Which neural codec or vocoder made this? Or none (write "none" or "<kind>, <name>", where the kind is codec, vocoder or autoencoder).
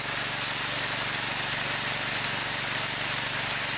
none